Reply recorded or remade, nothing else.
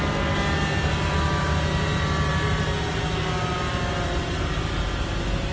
recorded